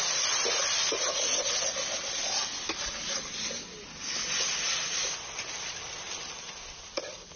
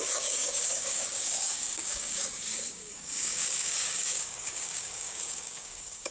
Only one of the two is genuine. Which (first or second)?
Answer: first